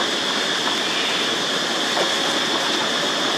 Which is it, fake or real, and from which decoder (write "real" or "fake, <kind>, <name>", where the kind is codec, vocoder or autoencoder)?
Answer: real